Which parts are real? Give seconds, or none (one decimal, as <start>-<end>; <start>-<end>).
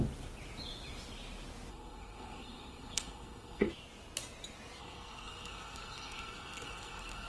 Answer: 0.0-1.7; 3.7-4.8